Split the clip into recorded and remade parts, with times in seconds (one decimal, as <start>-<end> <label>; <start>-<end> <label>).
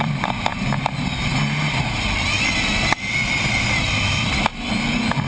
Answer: 0.0-0.5 remade; 0.5-2.7 recorded; 2.7-4.5 remade; 4.5-5.3 recorded